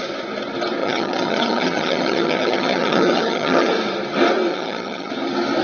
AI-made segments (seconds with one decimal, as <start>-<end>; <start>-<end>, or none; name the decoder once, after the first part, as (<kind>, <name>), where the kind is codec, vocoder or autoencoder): 0.8-3.7 (vocoder, HiFi-GAN); 4.5-5.1